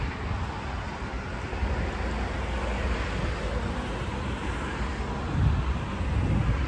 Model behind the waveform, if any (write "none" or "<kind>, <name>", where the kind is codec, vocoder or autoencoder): none